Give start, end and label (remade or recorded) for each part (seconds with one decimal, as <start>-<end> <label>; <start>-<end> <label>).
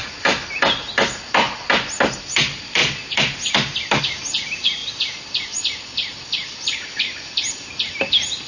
0.0-8.5 recorded